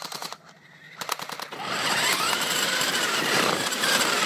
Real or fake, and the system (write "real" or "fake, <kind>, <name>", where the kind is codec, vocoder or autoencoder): fake, vocoder, BigVGAN v2